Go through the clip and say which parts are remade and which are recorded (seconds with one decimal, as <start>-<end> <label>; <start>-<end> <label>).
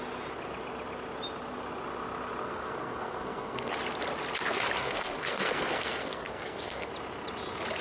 0.0-2.4 recorded; 2.4-3.7 remade; 3.7-4.8 recorded; 4.8-6.9 remade; 6.9-7.8 recorded